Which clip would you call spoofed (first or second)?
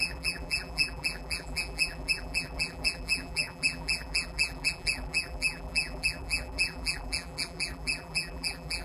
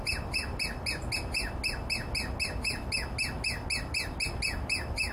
first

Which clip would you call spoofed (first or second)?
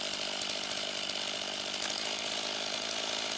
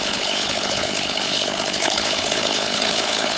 second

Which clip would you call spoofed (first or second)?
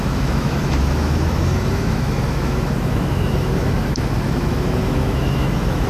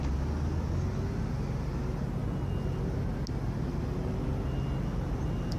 first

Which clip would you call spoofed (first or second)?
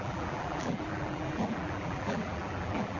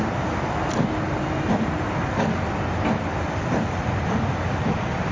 first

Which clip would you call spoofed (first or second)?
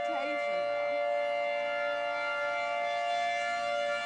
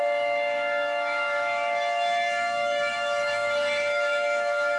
second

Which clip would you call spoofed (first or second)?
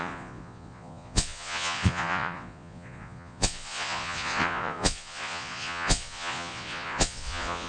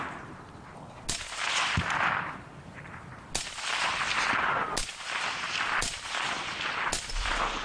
first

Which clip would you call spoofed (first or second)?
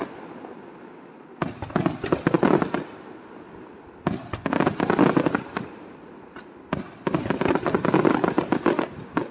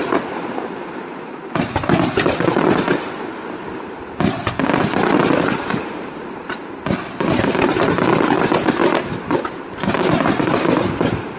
second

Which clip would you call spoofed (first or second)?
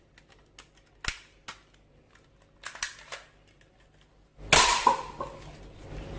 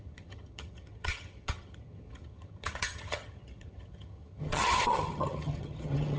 second